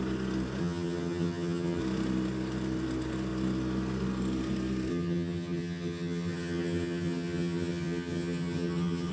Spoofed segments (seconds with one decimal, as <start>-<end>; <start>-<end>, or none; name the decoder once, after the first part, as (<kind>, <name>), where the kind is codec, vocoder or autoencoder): 0.6-1.8 (vocoder, HiFi-GAN); 4.9-9.1